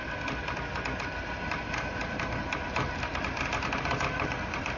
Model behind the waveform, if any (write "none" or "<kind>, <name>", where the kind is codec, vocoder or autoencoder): none